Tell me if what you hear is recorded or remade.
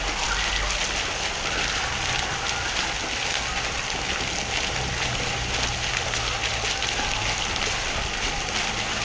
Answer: recorded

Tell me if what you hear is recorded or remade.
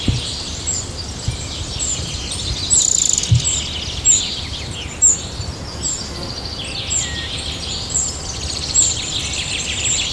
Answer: recorded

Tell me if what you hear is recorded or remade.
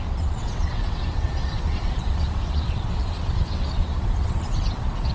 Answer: remade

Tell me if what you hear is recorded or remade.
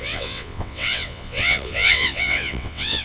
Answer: remade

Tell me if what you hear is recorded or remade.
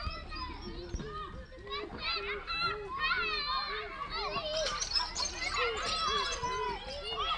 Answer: recorded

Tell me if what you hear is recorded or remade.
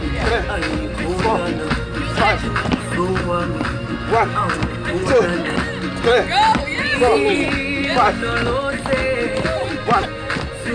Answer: recorded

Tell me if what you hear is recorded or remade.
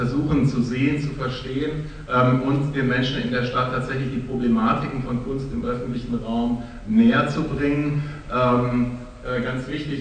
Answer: recorded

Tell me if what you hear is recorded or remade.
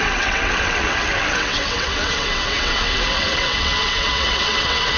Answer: remade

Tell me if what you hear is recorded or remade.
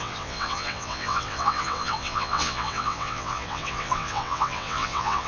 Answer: remade